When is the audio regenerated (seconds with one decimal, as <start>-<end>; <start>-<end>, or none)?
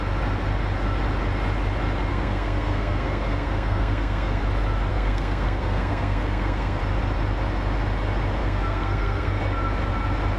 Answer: 2.1-4.4; 4.9-6.8; 8.4-9.4